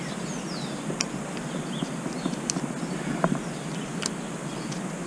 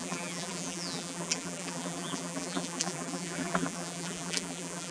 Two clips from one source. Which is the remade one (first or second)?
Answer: second